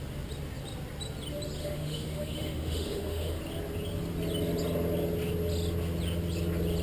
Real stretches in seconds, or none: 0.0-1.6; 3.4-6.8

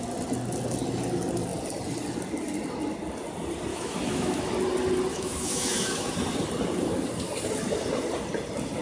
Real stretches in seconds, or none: 0.0-3.7; 4.5-5.1; 6.1-8.8

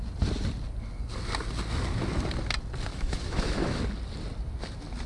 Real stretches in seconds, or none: 0.0-2.9; 3.8-5.1